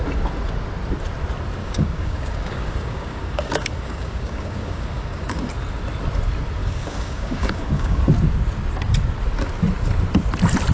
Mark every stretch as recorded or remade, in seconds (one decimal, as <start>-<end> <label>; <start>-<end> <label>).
0.0-1.6 recorded; 1.6-5.5 remade; 5.5-6.6 recorded; 6.6-8.0 remade; 8.0-10.7 recorded